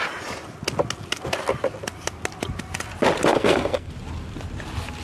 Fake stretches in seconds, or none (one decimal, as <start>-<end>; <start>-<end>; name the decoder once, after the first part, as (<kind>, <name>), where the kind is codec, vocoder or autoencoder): 3.3-3.9 (codec, SNAC)